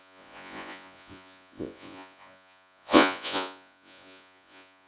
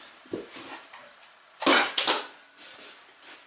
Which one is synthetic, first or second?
first